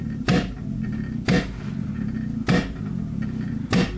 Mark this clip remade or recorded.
recorded